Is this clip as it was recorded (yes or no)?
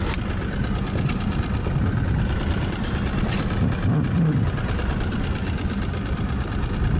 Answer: no